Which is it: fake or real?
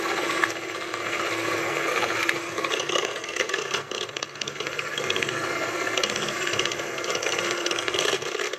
fake